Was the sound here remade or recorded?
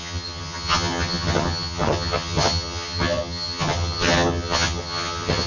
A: remade